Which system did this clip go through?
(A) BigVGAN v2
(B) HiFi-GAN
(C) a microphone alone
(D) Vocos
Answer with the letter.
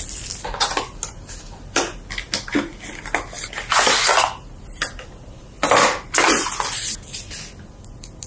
C